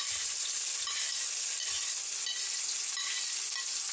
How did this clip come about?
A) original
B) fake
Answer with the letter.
A